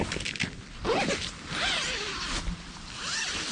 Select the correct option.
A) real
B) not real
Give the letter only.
A